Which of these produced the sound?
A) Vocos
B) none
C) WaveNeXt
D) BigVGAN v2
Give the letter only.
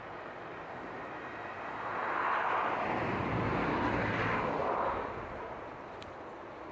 B